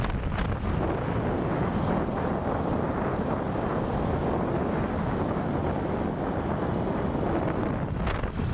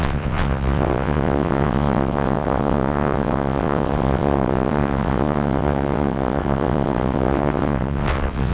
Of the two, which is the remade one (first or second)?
second